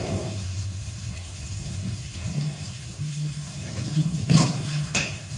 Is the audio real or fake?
fake